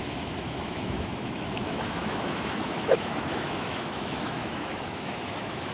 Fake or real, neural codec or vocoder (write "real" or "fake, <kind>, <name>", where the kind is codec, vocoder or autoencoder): fake, autoencoder, DAC-VAE